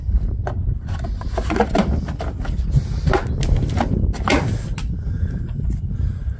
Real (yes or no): yes